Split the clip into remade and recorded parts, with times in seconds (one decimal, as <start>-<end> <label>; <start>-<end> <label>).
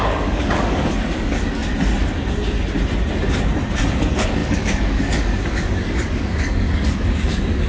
0.0-1.6 remade; 1.6-4.0 recorded; 4.0-7.7 remade